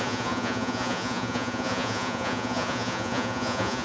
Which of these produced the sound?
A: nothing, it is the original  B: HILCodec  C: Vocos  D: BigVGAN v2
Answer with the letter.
C